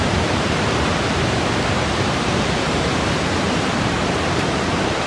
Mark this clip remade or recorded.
remade